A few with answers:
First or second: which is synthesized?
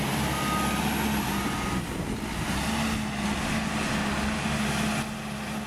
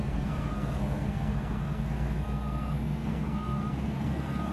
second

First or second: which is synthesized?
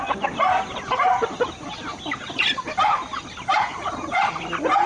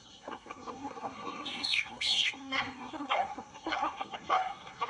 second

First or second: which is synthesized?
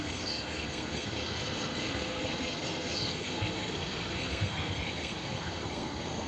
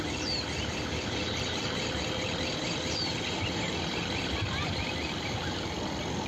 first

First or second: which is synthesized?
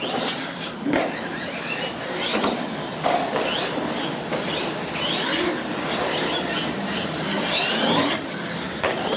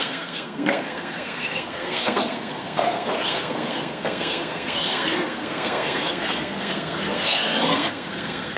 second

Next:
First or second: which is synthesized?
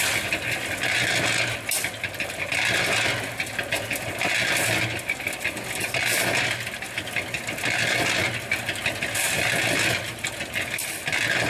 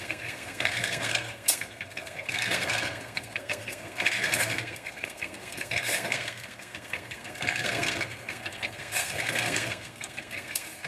second